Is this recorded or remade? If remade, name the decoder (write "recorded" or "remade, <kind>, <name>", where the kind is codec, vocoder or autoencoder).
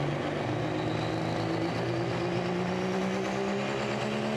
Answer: recorded